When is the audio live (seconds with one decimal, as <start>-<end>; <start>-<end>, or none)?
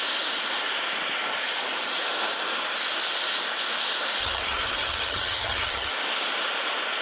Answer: 0.0-4.2; 5.9-7.0